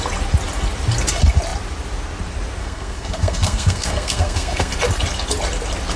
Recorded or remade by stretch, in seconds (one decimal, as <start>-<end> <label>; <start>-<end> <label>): 0.0-2.6 recorded; 2.6-4.7 remade; 4.7-6.0 recorded